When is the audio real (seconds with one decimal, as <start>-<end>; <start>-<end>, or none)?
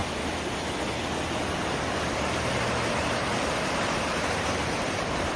0.0-3.0